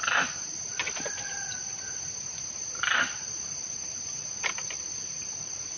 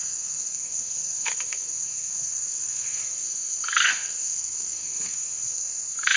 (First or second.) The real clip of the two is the first